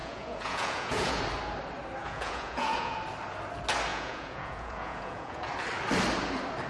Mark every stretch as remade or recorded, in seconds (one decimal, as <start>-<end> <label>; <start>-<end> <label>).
0.0-1.2 remade; 1.2-2.0 recorded; 2.0-3.0 remade; 3.0-3.9 recorded; 3.9-5.5 remade; 5.5-6.7 recorded